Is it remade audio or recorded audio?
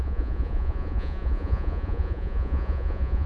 remade